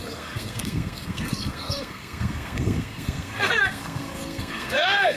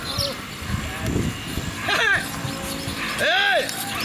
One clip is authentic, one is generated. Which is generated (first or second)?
first